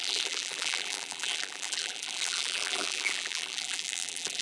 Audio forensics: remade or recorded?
remade